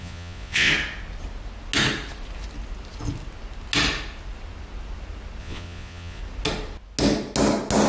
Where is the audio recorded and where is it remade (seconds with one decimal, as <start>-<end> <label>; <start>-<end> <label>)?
0.0-0.7 remade; 0.7-5.4 recorded; 5.4-6.2 remade; 6.2-7.9 recorded